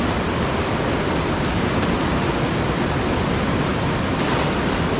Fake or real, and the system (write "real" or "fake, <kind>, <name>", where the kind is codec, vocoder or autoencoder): real